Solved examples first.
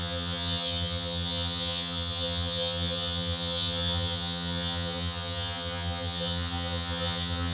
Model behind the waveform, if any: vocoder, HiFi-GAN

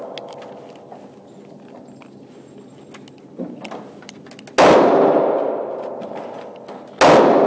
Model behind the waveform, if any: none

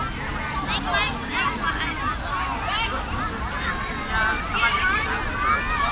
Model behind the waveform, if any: none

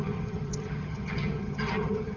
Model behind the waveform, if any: vocoder, HiFi-GAN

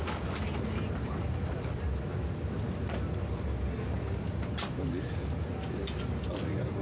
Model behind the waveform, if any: none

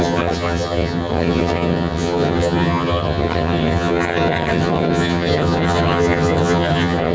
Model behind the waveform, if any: vocoder, HiFi-GAN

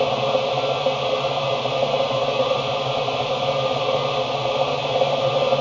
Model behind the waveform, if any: none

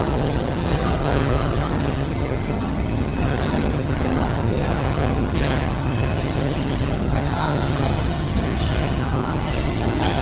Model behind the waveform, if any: vocoder, HiFi-GAN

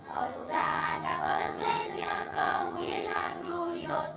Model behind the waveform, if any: vocoder, HiFi-GAN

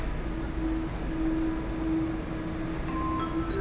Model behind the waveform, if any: none